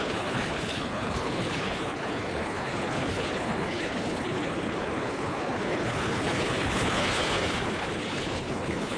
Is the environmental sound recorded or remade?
remade